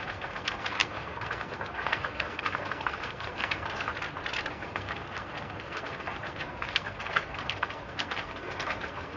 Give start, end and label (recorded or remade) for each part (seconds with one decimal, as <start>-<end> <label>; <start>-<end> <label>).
0.0-3.9 remade; 3.9-4.5 recorded; 4.5-9.2 remade